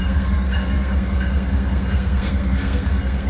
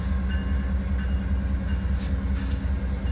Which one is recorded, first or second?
second